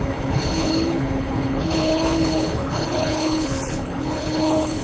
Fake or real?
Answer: fake